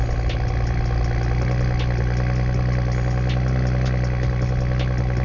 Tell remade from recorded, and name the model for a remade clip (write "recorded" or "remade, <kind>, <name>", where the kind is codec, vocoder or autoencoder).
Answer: recorded